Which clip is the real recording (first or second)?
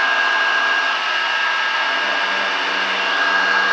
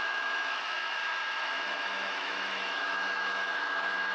first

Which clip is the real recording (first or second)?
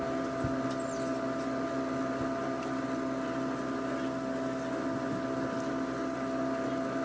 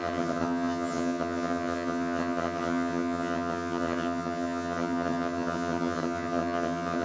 first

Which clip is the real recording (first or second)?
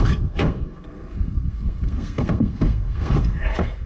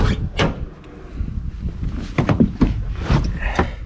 second